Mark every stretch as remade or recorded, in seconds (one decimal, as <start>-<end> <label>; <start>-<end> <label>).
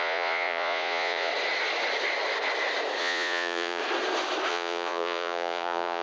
0.0-1.3 remade; 1.3-3.0 recorded; 3.0-3.8 remade; 3.8-4.5 recorded; 4.5-6.0 remade